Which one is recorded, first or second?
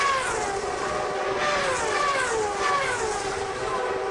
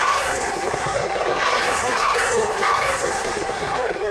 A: first